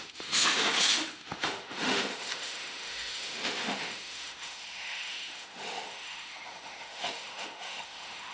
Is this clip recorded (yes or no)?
no